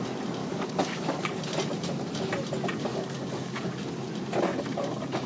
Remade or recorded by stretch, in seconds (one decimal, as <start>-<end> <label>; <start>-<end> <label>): 0.0-0.4 recorded; 0.4-1.4 remade; 1.4-2.9 recorded; 2.9-3.8 remade; 3.8-5.3 recorded